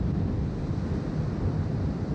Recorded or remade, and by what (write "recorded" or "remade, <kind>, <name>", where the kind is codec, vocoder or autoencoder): recorded